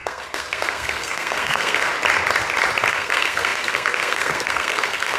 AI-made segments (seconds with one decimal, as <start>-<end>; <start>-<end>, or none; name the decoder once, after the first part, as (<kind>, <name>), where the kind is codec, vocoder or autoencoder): 0.0-1.9 (codec, SNAC); 2.9-5.2